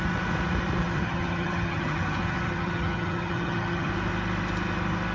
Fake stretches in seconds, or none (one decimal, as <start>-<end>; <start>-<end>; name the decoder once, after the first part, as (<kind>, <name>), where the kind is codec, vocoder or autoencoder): 0.8-3.9 (vocoder, HiFi-GAN)